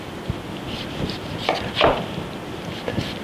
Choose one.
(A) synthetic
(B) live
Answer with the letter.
B